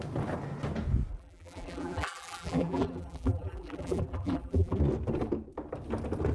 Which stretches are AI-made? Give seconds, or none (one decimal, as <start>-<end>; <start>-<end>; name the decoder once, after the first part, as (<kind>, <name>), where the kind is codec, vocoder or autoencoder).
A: 1.1-4.8 (vocoder, BigVGAN v2)